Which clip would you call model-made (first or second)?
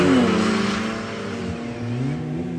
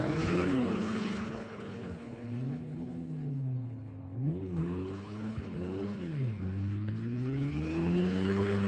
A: second